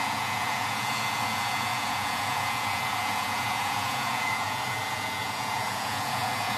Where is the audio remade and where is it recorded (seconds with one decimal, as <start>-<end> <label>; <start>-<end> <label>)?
0.0-6.6 remade